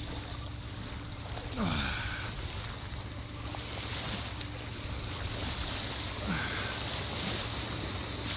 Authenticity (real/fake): real